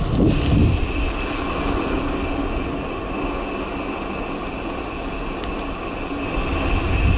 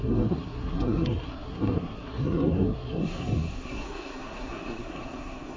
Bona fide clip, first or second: first